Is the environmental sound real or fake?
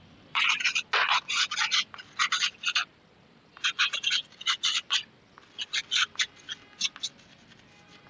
real